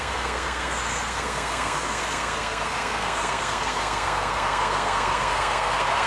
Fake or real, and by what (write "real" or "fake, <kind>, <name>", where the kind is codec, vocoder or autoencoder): fake, codec, SNAC